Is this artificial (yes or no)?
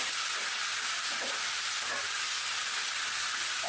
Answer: no